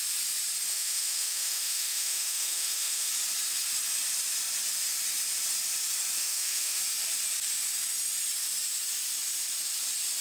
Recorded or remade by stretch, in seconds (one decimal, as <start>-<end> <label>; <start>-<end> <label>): 0.0-0.7 recorded; 0.7-3.1 remade; 3.1-6.2 recorded; 6.2-6.8 remade; 6.8-10.2 recorded